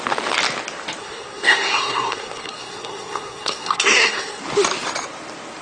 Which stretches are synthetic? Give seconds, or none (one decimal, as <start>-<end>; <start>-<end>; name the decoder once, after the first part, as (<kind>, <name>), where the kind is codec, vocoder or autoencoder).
1.0-4.4 (codec, SNAC)